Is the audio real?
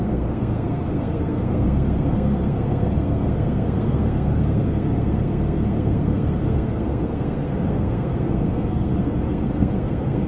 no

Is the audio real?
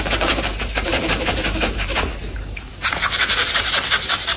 no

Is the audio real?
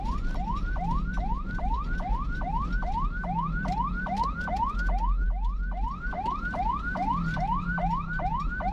yes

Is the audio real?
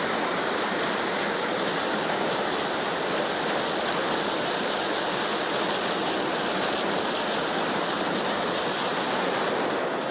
yes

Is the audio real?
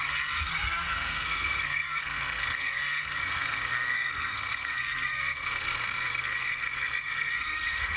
no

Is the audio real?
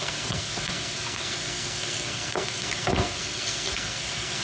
no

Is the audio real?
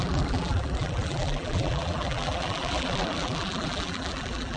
no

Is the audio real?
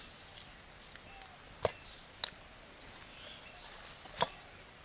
yes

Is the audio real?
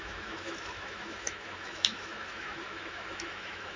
no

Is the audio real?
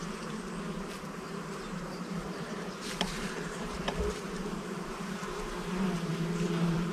no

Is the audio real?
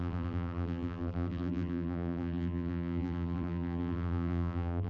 no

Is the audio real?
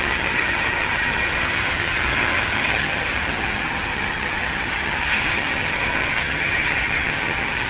no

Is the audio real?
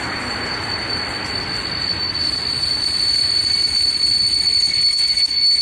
yes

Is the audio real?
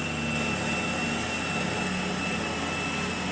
yes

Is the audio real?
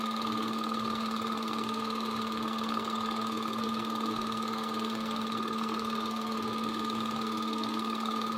no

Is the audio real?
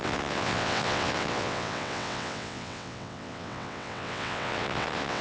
no